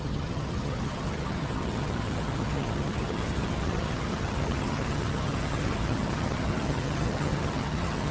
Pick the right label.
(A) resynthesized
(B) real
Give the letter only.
A